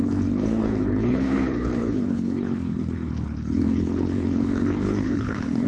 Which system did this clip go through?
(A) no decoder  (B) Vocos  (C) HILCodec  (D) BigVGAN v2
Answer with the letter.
C